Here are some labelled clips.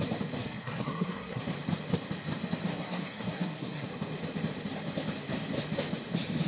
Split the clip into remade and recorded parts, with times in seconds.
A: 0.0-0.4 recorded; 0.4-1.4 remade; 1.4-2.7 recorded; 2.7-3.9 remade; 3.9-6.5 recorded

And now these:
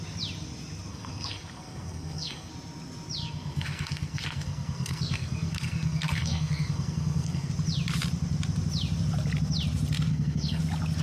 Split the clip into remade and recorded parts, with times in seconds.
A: 0.0-0.9 recorded; 0.9-2.5 remade; 2.5-3.2 recorded; 3.2-7.5 remade; 7.5-10.1 recorded; 10.1-10.6 remade; 10.6-11.0 recorded

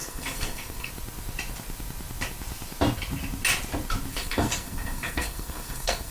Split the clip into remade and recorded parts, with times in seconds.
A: 0.0-0.9 remade; 0.9-4.1 recorded; 4.1-6.1 remade

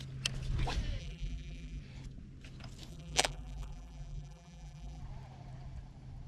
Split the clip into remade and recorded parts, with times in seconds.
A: 0.0-1.0 recorded; 1.0-1.8 remade; 1.8-2.9 recorded; 2.9-5.0 remade; 5.0-6.3 recorded

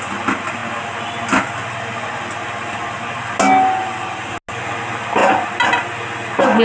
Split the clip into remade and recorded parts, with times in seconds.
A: 0.0-6.6 recorded